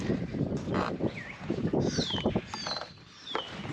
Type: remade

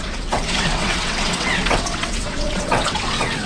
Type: remade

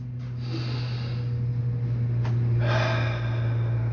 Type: recorded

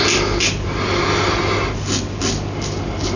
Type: recorded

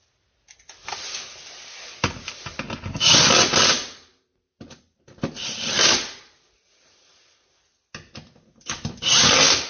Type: recorded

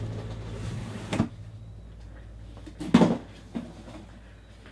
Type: recorded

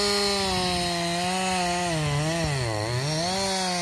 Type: recorded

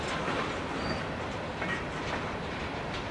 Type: recorded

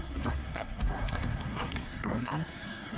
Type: remade